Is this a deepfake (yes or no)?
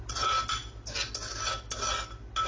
no